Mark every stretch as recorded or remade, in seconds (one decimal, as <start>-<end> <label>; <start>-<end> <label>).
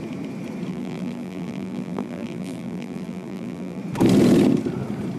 0.0-0.7 recorded; 0.7-3.8 remade; 3.8-5.2 recorded